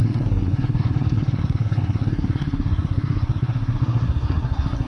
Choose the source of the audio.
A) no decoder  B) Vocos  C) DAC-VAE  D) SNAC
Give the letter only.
D